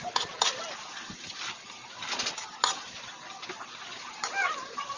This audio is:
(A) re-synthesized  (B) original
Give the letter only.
B